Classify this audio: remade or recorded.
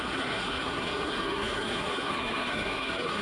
remade